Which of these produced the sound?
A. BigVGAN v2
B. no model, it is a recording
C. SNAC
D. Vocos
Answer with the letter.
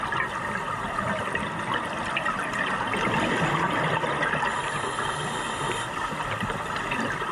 B